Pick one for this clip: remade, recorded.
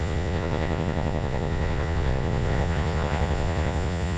remade